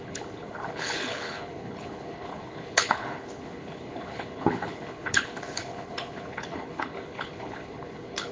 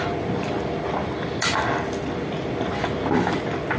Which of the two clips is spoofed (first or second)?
first